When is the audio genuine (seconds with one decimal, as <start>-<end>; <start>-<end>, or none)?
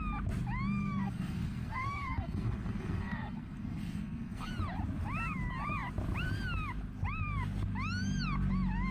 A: 0.0-0.8; 4.5-8.9